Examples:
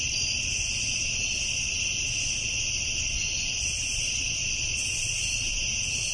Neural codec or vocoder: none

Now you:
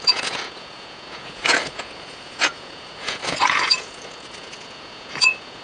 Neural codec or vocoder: vocoder, Vocos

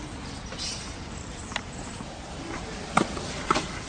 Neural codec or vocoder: vocoder, BigVGAN v2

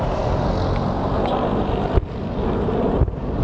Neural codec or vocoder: none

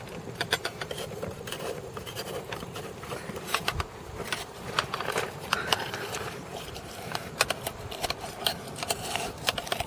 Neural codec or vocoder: vocoder, BigVGAN v2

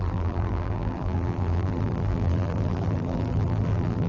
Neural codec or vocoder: vocoder, BigVGAN v2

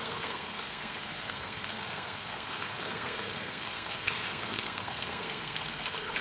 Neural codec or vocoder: codec, SNAC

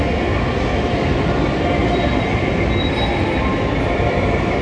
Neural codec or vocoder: none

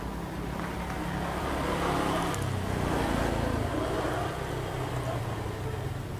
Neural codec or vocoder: none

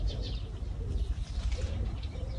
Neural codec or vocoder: vocoder, BigVGAN v2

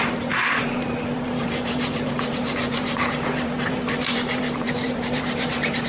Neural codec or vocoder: vocoder, BigVGAN v2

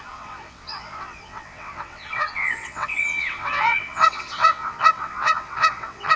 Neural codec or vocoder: vocoder, WaveNeXt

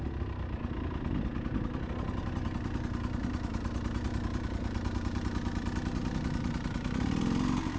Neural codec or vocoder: none